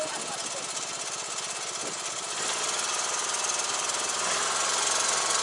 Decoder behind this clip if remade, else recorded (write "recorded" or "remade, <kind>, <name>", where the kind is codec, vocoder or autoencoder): recorded